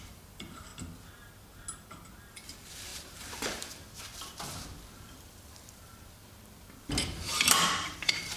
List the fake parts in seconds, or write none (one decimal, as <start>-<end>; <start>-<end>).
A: 0.0-0.7; 2.2-6.2; 7.0-8.4